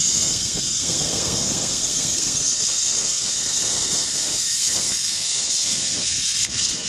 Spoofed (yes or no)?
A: yes